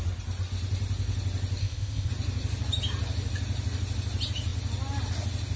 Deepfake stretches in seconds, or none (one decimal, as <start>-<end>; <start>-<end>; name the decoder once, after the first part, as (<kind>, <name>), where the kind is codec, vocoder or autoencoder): 1.6-2.1 (codec, ZipCodec)